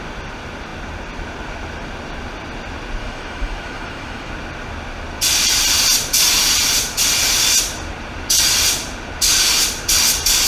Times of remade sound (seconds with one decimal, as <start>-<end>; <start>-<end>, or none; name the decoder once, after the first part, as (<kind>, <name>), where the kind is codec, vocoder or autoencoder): 3.0-4.3 (autoencoder, DAC-VAE)

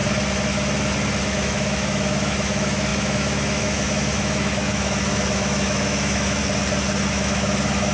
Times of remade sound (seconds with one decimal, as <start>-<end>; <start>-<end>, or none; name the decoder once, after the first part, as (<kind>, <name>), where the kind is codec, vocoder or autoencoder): 1.2-6.4 (autoencoder, DAC-VAE); 7.1-7.9